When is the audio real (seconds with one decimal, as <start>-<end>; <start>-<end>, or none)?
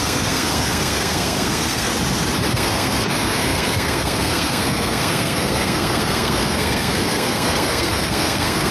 1.9-2.5